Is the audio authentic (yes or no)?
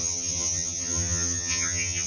no